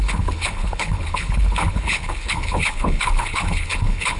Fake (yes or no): yes